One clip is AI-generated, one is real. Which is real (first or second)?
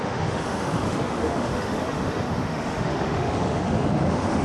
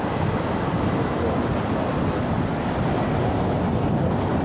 second